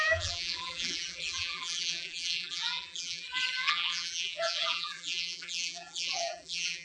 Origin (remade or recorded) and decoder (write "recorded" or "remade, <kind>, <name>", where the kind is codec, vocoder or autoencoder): remade, vocoder, BigVGAN v2